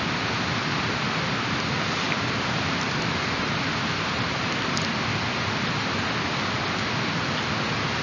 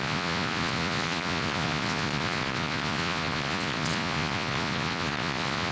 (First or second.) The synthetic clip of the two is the second